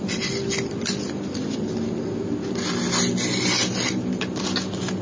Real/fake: real